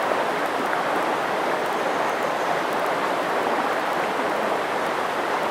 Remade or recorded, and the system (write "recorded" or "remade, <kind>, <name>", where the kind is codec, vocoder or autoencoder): recorded